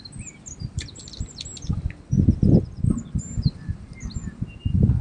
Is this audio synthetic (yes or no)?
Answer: no